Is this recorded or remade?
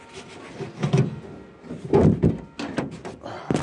recorded